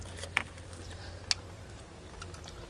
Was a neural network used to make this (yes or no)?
no